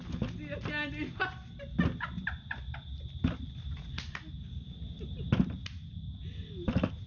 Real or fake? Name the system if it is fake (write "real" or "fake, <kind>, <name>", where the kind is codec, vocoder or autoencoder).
real